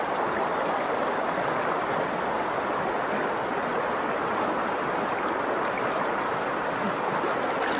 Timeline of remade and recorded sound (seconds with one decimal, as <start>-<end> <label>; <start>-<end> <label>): 0.0-7.8 recorded